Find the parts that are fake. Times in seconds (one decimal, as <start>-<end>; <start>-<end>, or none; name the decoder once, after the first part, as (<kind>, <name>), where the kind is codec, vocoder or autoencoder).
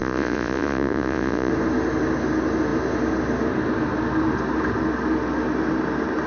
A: 0.0-1.5 (vocoder, Vocos)